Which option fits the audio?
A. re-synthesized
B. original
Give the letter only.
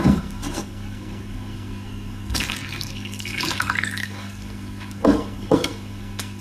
A